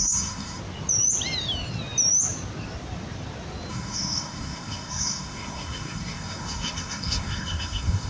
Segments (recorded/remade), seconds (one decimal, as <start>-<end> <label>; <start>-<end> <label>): 0.0-0.6 remade; 0.6-3.7 recorded; 3.7-8.1 remade